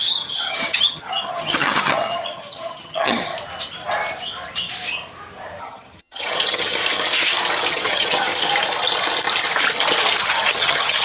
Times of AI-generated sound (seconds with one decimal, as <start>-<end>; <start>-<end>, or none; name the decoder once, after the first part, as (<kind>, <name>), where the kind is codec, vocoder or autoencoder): 0.0-3.3 (vocoder, HiFi-GAN); 5.6-6.8; 7.7-8.3; 10.2-11.0